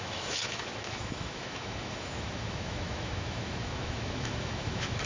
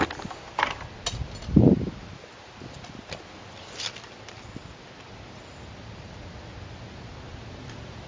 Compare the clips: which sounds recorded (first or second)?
second